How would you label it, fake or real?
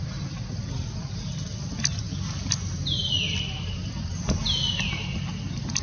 real